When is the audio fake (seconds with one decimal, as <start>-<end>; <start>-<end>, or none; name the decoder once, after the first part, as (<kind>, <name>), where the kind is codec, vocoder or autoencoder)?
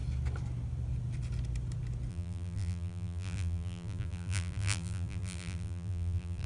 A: 2.1-6.5 (vocoder, BigVGAN v2)